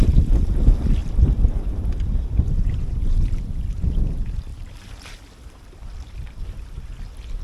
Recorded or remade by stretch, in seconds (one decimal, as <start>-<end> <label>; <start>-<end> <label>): 0.0-1.0 recorded; 1.0-1.7 remade; 1.7-4.5 recorded; 4.5-6.9 remade; 6.9-7.4 recorded